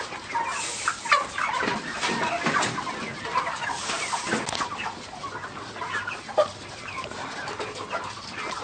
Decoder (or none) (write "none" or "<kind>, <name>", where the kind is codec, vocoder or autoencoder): none